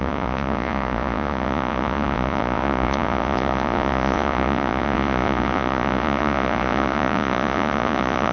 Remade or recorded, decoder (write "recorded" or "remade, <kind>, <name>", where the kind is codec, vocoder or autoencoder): remade, vocoder, Vocos